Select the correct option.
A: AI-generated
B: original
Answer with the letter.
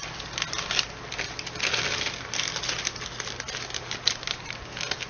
B